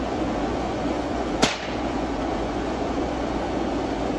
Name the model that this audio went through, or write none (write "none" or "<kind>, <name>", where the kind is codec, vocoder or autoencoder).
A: vocoder, Vocos